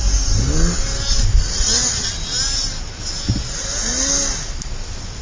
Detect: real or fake real